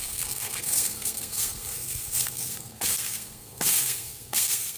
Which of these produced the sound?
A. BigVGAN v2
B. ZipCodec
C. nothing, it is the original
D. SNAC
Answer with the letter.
D